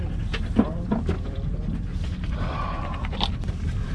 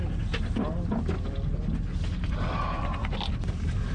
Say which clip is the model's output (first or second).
first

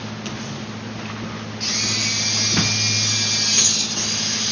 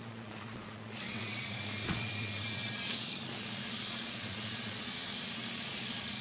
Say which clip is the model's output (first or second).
second